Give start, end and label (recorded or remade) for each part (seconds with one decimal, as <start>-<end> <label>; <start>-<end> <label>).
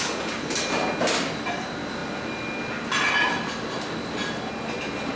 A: 0.0-5.2 recorded